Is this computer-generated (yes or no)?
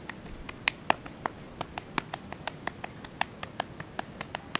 no